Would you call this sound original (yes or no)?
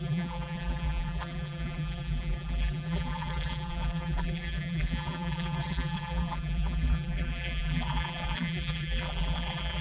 no